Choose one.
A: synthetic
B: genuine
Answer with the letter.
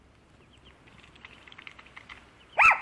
B